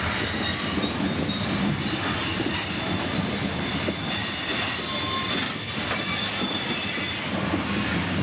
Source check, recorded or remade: recorded